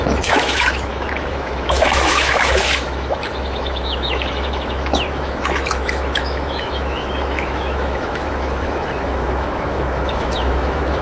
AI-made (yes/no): yes